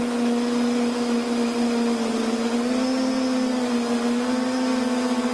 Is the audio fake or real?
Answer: real